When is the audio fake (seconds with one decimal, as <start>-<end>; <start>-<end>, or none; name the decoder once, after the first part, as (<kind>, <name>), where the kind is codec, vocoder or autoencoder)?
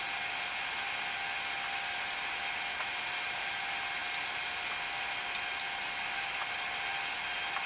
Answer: none